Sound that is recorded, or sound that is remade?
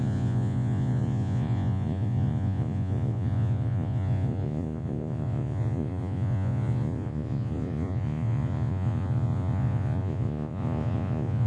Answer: remade